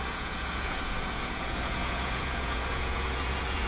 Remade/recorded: remade